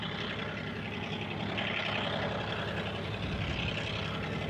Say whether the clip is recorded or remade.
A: recorded